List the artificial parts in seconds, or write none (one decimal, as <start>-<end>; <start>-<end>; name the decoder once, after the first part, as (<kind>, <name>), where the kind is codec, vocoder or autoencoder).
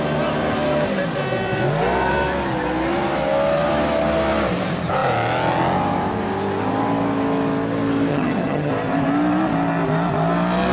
8.1-8.7 (vocoder, HiFi-GAN)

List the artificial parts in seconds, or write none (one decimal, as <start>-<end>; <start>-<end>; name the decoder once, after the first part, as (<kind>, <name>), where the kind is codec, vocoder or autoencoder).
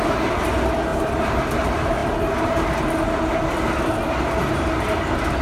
0.9-1.4 (vocoder, BigVGAN v2)